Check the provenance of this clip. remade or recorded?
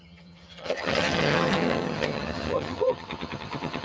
remade